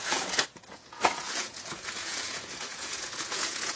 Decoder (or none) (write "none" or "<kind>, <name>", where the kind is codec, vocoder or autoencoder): vocoder, Vocos